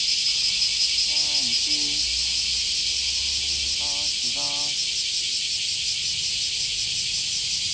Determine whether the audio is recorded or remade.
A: recorded